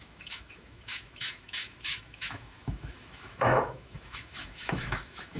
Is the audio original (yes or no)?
no